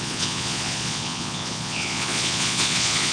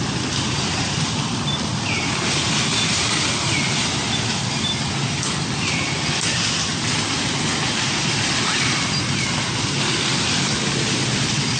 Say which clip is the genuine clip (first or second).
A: second